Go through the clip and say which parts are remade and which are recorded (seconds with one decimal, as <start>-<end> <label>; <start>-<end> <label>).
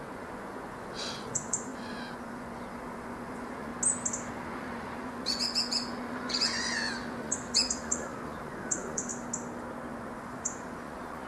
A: 0.0-3.7 remade; 3.7-4.3 recorded; 4.3-9.1 remade; 9.1-9.9 recorded; 9.9-11.3 remade